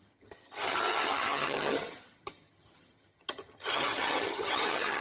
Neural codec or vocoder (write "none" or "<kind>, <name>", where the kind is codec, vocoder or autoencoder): vocoder, HiFi-GAN